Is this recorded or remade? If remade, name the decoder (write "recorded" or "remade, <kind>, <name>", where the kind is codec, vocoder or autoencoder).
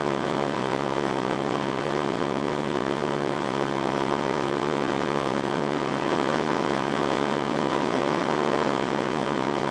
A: remade, vocoder, WaveNeXt